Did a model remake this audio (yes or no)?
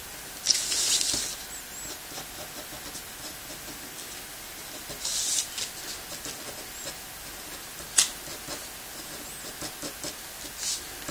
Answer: no